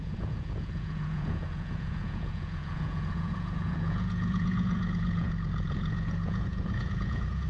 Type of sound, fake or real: fake